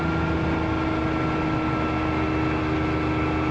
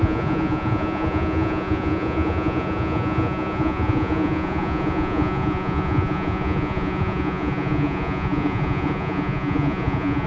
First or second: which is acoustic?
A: first